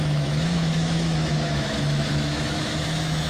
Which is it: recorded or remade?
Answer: remade